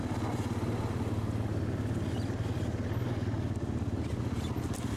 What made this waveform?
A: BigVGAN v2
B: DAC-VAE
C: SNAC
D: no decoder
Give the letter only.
D